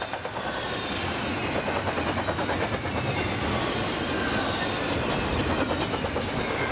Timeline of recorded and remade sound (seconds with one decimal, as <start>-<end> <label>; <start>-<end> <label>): 0.0-6.7 recorded